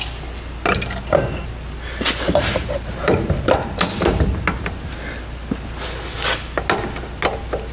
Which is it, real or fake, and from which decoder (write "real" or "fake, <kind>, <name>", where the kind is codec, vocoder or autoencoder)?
real